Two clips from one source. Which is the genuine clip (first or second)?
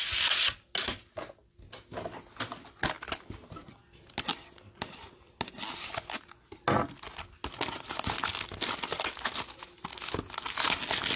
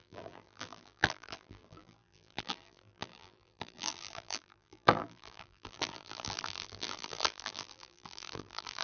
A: first